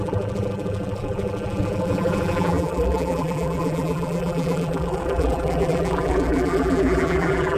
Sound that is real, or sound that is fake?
fake